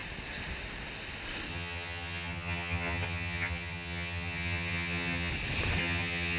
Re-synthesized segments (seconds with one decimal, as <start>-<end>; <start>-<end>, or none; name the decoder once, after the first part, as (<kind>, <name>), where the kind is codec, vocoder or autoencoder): 1.5-5.3 (vocoder, HiFi-GAN); 5.8-6.4